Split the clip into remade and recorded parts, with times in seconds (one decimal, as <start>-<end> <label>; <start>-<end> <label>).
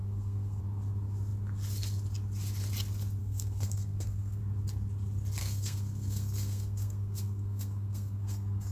0.0-0.6 remade; 0.6-3.2 recorded; 3.2-4.4 remade; 4.4-5.4 recorded; 5.4-8.7 remade